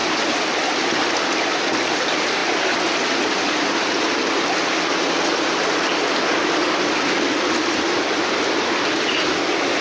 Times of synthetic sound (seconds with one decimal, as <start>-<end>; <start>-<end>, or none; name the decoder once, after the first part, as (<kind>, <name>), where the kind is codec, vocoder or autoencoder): none